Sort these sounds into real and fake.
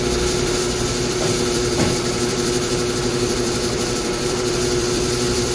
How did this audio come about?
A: fake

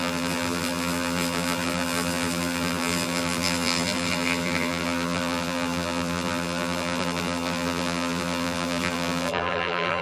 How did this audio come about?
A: fake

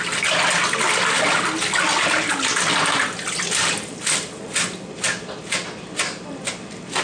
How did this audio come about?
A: real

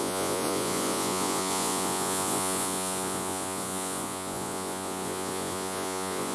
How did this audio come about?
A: fake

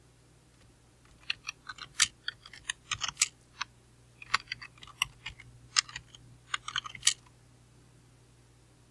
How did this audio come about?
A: real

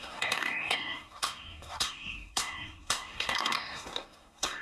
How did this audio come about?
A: fake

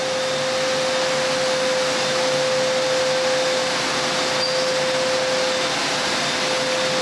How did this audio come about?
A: real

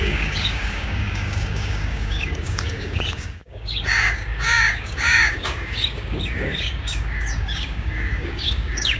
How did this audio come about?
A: fake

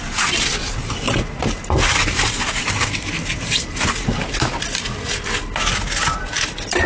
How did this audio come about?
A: real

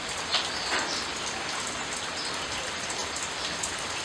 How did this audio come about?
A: real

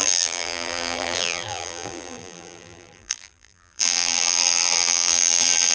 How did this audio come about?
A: fake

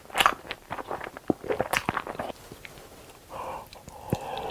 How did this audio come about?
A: real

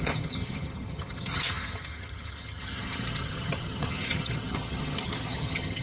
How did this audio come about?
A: fake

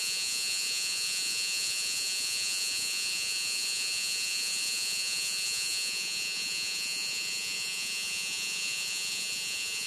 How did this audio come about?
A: fake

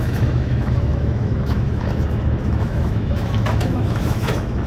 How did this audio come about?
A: fake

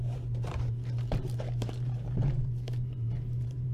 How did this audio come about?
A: fake